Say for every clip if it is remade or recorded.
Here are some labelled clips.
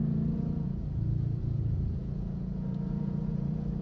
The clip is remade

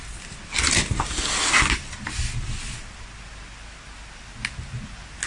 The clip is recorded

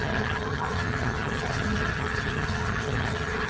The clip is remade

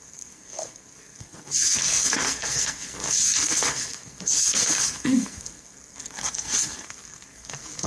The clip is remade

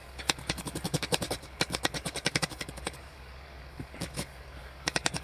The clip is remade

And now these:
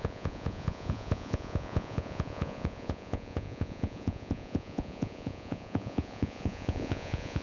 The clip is remade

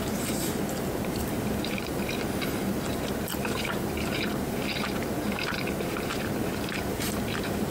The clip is remade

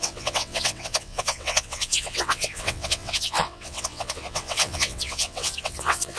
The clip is remade